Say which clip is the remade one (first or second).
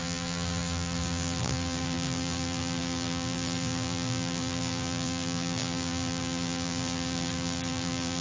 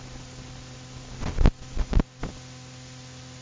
first